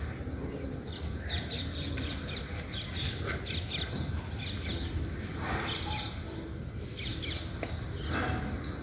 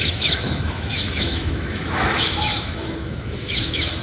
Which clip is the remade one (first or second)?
second